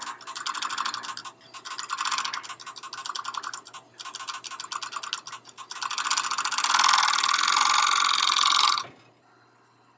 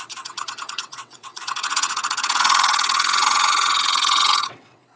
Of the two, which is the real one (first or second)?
first